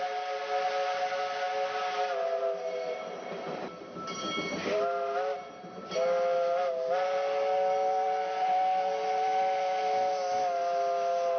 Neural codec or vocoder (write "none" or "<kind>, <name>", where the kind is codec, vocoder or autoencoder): none